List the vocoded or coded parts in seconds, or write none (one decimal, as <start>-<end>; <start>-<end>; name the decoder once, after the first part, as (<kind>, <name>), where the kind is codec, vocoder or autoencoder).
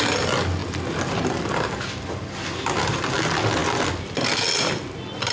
none